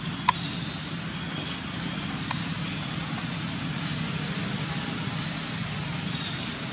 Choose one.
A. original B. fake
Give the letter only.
A